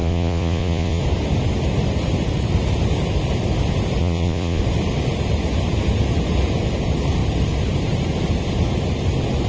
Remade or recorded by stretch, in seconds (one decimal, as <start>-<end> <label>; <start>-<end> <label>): 0.0-1.0 remade; 1.0-4.0 recorded; 4.0-4.6 remade; 4.6-9.5 recorded